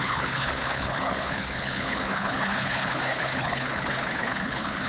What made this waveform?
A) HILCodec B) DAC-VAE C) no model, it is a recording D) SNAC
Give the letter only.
A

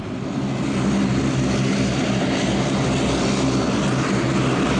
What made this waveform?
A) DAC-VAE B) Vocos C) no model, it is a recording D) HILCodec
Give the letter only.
C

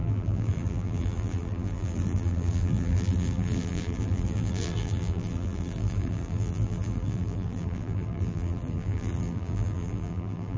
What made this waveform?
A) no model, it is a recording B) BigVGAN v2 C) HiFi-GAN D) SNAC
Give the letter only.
B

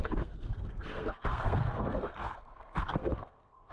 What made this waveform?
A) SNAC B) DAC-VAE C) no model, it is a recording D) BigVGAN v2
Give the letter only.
A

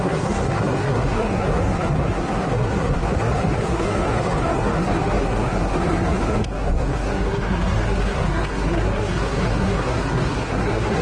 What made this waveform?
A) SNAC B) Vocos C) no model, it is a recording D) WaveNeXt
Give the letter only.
A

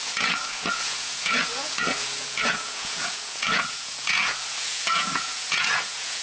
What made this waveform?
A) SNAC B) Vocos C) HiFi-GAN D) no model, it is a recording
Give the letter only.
B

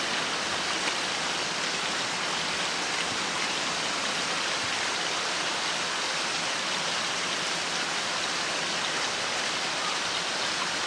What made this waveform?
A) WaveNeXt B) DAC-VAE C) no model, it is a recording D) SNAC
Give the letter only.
C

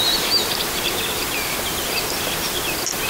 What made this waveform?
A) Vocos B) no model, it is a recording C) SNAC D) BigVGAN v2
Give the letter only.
B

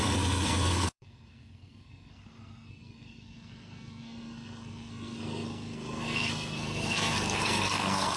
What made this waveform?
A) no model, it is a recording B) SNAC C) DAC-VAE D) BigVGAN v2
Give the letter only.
B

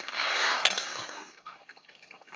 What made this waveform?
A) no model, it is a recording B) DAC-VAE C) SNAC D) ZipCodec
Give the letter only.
C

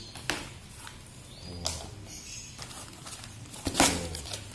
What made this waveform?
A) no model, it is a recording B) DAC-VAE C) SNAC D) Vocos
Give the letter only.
A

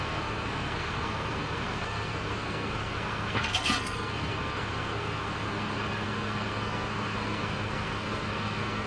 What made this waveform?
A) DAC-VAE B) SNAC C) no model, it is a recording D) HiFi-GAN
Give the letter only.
B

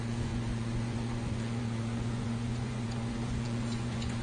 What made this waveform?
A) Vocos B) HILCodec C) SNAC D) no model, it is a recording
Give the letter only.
A